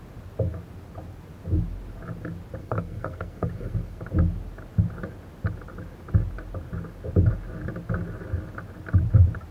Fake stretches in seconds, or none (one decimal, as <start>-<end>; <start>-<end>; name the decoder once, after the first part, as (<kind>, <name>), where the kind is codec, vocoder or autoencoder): 2.6-4.0 (codec, SNAC)